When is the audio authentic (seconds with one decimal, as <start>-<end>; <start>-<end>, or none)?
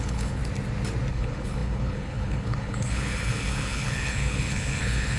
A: 0.4-1.1